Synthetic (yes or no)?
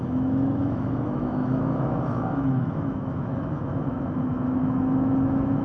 yes